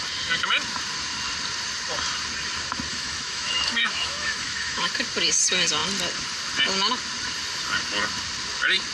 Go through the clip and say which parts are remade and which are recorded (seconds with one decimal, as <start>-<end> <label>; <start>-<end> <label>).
0.0-2.9 recorded; 2.9-4.9 remade; 4.9-8.9 recorded